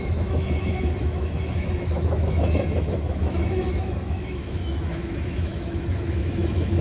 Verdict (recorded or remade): remade